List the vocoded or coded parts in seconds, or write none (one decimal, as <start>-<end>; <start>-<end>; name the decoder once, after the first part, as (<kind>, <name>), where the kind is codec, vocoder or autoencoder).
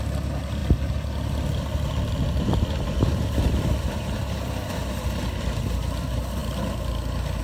none